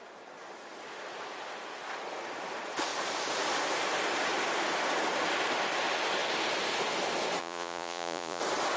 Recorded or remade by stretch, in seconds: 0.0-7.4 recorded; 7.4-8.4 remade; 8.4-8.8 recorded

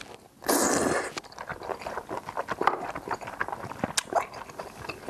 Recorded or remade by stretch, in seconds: 0.0-5.1 recorded

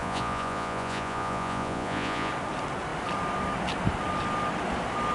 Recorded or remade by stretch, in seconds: 0.0-2.3 remade; 2.3-5.1 recorded

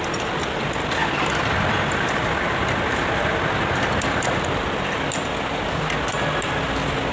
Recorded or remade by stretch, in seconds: 0.0-7.1 recorded

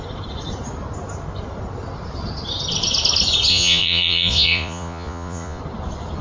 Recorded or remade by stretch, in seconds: 0.0-3.5 recorded; 3.5-5.6 remade; 5.6-6.2 recorded

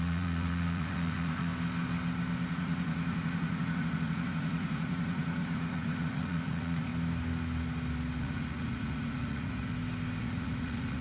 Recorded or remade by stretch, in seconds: 0.0-1.5 remade; 1.5-2.5 recorded; 2.5-6.9 remade; 6.9-8.2 recorded; 8.2-9.7 remade; 9.7-10.2 recorded; 10.2-11.0 remade

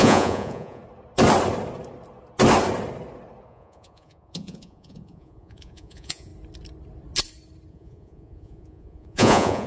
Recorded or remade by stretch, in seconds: 0.0-0.8 remade; 0.8-3.5 recorded; 3.5-6.3 remade; 6.3-7.7 recorded; 7.7-9.7 remade

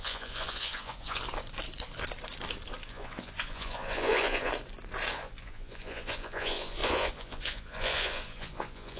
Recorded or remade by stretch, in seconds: 0.0-1.2 remade; 1.2-2.9 recorded; 2.9-4.5 remade; 4.5-5.1 recorded; 5.1-9.0 remade